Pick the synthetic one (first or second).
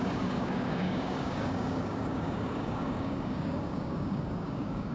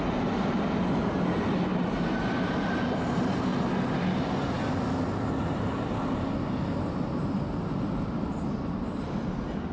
first